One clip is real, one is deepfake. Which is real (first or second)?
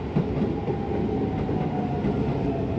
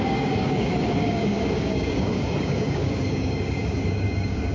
first